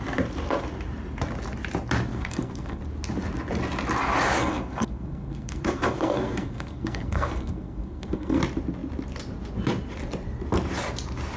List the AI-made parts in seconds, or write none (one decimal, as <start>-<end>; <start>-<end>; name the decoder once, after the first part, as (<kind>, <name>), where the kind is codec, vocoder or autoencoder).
2.1-2.8 (codec, SNAC); 4.4-8.4